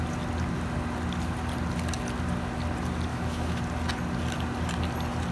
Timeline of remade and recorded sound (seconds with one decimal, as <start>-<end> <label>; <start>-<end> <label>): 0.0-3.1 recorded; 3.1-3.6 remade; 3.6-5.3 recorded